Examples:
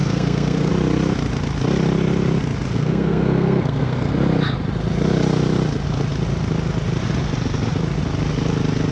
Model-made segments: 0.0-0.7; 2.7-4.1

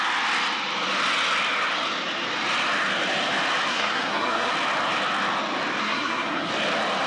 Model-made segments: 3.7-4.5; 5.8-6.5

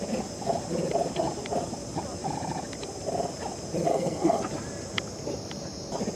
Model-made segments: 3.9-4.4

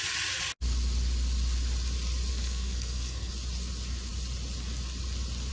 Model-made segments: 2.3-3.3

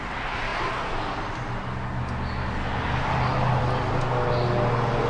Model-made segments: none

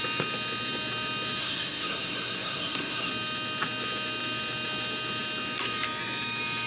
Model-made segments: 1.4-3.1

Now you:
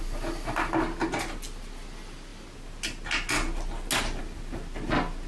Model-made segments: none

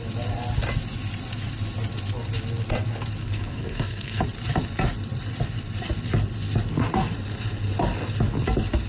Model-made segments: 3.2-4.2